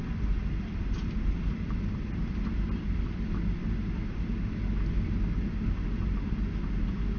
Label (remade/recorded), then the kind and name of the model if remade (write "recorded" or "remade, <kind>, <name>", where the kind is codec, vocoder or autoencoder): recorded